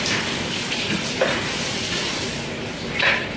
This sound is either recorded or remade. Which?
recorded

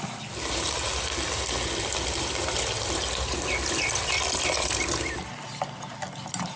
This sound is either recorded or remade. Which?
recorded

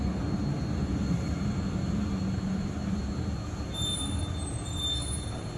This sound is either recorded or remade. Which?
recorded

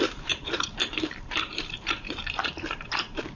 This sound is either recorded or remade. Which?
remade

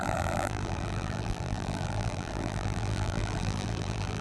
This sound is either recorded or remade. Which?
remade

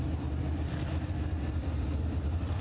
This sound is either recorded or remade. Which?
recorded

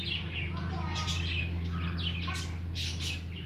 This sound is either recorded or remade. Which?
recorded